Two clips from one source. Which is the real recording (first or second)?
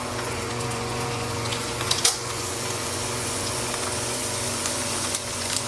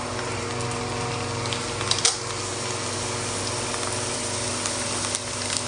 second